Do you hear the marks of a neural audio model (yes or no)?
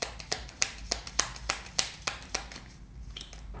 no